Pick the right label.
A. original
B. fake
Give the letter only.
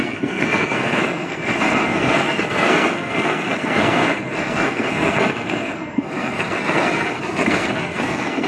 B